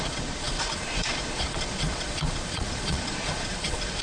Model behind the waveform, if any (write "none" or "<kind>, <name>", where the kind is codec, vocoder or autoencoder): vocoder, Vocos